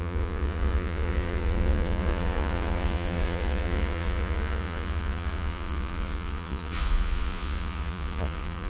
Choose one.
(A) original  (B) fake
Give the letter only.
B